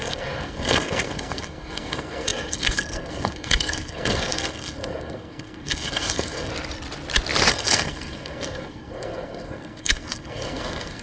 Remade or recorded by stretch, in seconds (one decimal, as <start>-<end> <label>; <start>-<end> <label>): 0.0-6.5 remade; 6.5-7.5 recorded; 7.5-11.0 remade